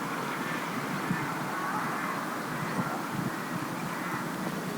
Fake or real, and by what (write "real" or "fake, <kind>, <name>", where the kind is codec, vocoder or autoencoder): real